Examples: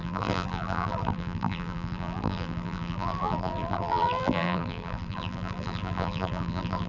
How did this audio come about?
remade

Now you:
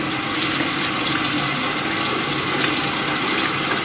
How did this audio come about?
recorded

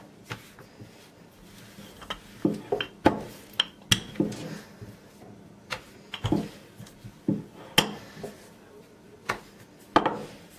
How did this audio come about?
recorded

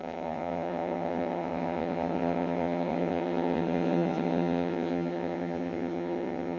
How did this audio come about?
remade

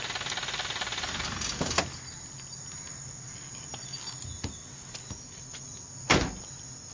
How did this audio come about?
recorded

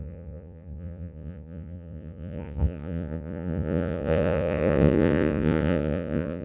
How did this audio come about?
remade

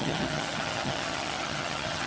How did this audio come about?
remade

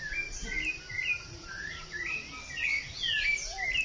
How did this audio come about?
recorded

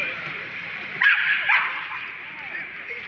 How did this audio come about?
remade